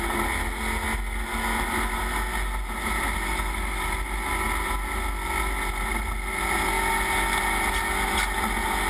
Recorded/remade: recorded